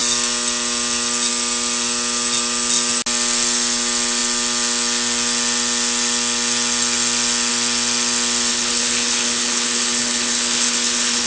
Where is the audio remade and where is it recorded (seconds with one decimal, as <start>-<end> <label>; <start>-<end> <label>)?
0.0-8.5 recorded; 8.5-11.3 remade